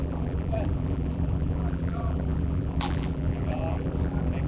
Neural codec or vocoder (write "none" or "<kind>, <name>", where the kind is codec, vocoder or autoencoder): vocoder, BigVGAN v2